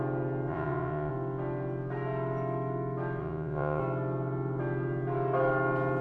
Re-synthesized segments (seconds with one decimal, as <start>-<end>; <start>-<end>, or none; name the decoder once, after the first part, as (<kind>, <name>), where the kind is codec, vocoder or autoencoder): 0.5-1.1 (vocoder, Vocos); 3.2-3.8